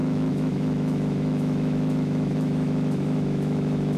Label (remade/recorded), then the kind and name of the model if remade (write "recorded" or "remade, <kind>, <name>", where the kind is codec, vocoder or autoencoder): remade, autoencoder, DAC-VAE